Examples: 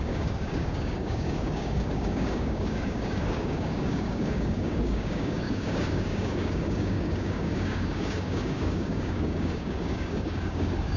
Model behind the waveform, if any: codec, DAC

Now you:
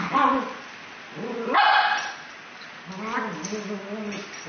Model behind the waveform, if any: none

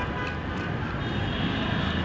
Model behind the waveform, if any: none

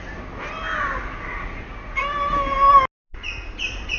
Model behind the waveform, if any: none